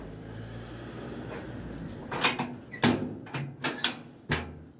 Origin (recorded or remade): recorded